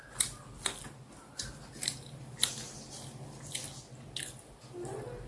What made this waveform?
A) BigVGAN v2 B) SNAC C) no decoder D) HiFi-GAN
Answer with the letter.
C